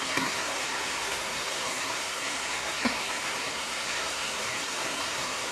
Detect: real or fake fake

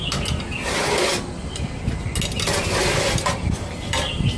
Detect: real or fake real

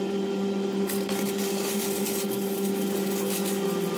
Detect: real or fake real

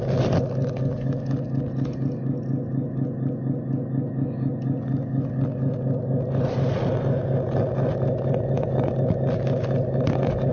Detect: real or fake real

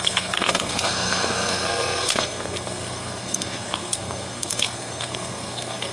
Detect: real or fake fake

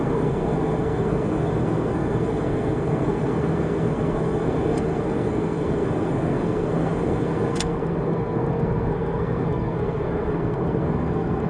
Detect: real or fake fake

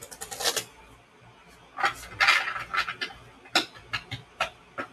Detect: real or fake real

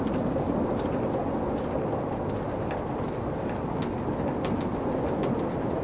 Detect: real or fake real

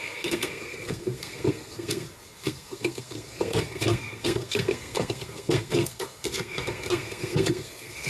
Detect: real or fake fake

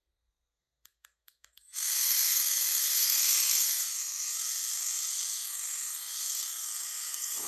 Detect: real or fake fake